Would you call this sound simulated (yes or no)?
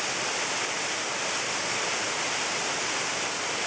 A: no